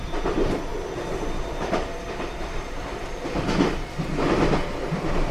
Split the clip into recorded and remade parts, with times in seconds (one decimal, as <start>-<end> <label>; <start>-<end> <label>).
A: 0.0-5.3 recorded